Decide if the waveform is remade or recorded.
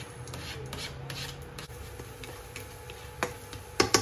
recorded